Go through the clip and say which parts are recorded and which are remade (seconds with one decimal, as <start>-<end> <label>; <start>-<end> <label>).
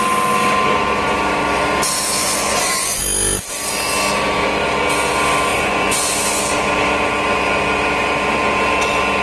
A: 0.0-2.2 recorded; 2.2-3.0 remade; 3.0-5.5 recorded; 5.5-6.4 remade; 6.4-9.2 recorded